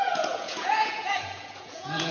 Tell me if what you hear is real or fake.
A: fake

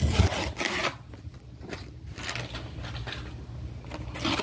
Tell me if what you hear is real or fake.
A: real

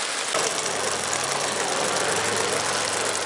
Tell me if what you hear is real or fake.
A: real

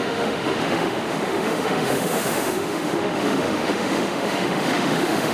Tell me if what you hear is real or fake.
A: fake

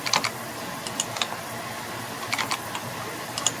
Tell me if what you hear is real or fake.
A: real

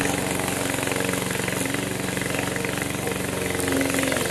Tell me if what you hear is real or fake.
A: real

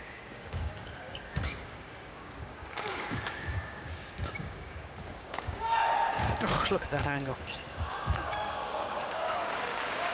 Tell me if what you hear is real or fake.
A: fake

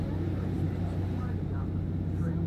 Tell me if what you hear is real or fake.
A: real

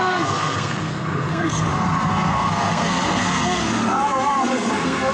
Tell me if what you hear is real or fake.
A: fake